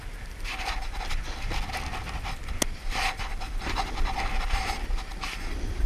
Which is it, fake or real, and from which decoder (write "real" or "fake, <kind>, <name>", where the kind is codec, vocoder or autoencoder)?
real